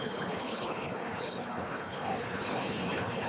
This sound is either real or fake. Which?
fake